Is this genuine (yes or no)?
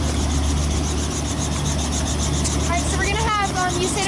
yes